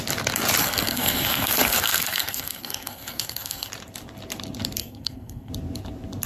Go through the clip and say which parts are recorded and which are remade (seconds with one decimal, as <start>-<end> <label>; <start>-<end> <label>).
0.0-0.6 recorded; 0.6-3.7 remade; 3.7-4.8 recorded; 4.8-5.5 remade; 5.5-6.3 recorded